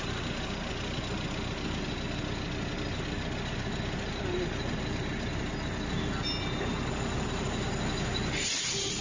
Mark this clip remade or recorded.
recorded